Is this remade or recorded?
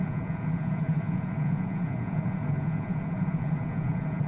remade